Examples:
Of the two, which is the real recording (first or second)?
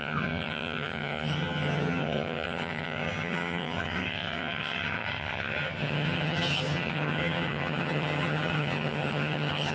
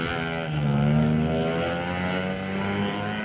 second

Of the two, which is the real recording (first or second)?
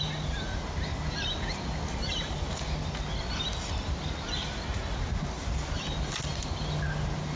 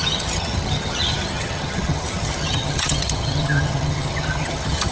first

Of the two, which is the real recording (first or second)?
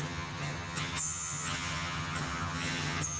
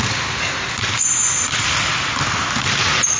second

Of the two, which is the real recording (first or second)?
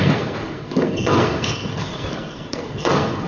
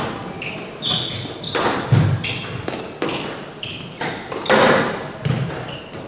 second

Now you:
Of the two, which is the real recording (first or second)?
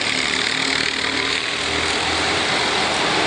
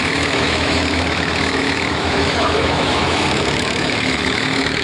first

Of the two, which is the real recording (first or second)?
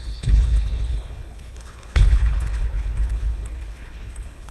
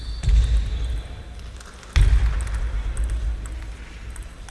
second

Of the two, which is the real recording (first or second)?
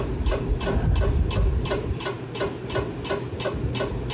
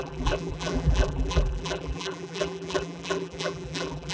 first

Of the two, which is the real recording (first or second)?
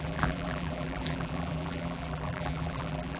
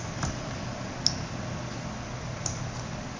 second